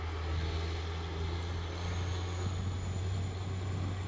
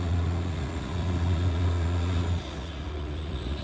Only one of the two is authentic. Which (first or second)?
first